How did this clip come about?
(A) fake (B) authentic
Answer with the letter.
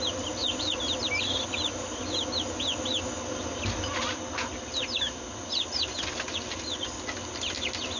B